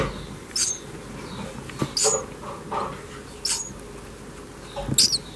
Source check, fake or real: real